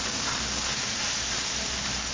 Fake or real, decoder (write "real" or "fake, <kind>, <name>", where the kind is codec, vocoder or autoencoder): real